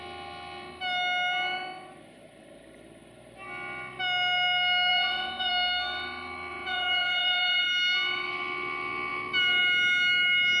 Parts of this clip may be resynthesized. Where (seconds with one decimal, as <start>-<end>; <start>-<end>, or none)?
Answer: 4.9-5.5; 6.5-7.7